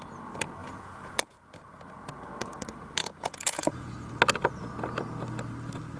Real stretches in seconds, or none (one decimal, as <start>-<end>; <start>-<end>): 0.0-0.6; 1.3-3.0; 4.1-6.0